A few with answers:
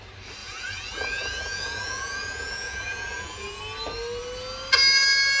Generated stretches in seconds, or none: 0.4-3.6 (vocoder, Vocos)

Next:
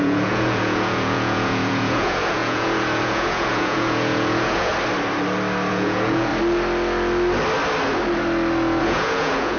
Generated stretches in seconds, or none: 0.0-4.7 (vocoder, Vocos); 5.7-6.3; 8.8-9.6

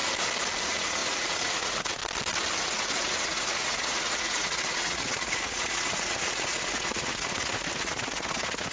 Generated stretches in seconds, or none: 0.6-2.0 (vocoder, Vocos); 2.6-8.7

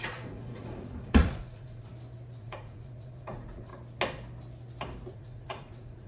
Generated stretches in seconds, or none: 0.0-1.9 (vocoder, Vocos); 2.4-3.7; 5.1-6.1

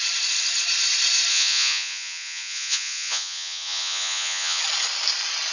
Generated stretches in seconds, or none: 1.3-4.6 (vocoder, Vocos)